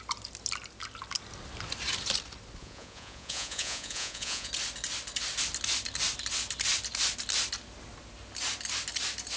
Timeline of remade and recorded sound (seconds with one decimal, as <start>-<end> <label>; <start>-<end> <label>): 0.0-2.6 recorded; 2.6-4.5 remade; 4.5-9.4 recorded